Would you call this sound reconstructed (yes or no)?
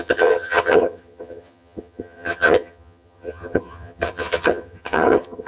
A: yes